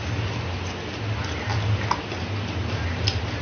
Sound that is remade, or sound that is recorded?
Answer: recorded